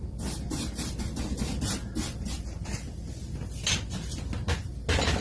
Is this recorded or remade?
recorded